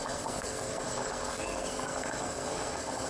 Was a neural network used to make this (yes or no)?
yes